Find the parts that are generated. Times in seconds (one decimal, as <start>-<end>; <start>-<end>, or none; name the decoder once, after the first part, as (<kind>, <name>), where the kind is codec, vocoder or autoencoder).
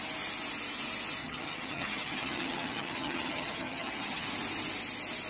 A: 1.2-4.3 (vocoder, HiFi-GAN)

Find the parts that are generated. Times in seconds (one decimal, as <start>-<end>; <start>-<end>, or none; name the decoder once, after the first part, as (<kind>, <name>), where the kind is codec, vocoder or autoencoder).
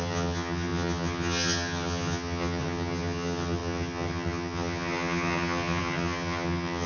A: 0.0-6.9 (vocoder, HiFi-GAN)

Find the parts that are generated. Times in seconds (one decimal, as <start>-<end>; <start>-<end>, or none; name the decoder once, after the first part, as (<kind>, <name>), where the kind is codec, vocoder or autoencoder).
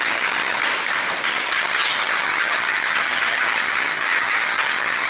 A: 0.0-0.6 (vocoder, HiFi-GAN); 1.3-5.1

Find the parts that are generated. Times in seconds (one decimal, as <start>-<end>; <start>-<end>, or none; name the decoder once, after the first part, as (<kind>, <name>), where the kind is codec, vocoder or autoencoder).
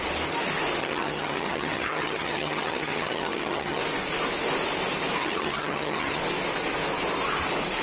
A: 0.8-3.8 (vocoder, HiFi-GAN); 5.2-6.2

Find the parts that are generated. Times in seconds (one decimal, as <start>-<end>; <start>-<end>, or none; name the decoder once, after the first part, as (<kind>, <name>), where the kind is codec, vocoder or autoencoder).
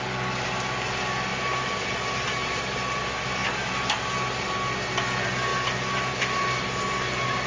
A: none